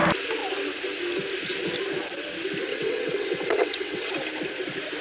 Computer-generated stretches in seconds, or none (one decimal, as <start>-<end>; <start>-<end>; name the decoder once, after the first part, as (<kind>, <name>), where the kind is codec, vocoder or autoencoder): 2.7-4.1 (vocoder, WaveNeXt)